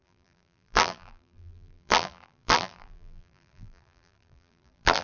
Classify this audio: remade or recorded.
remade